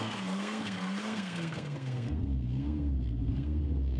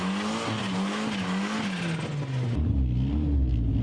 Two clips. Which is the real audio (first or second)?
second